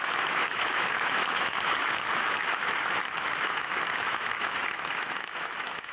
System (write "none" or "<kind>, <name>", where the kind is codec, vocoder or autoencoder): autoencoder, DAC-VAE